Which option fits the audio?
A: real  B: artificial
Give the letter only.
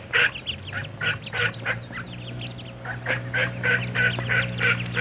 A